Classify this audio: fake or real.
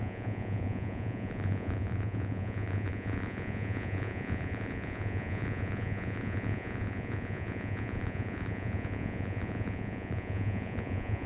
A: fake